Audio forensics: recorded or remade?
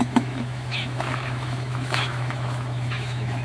remade